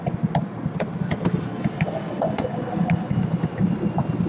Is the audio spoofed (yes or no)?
no